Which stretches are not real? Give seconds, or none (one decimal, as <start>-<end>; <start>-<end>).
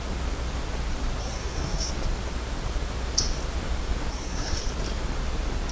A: 1.2-1.9; 4.1-4.7